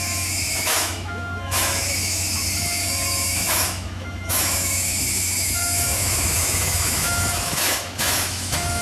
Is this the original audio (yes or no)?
no